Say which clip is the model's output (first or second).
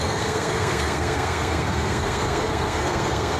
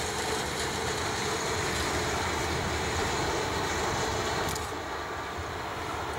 first